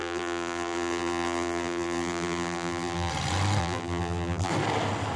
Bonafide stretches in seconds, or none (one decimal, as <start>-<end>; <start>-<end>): 3.1-3.6; 4.5-5.2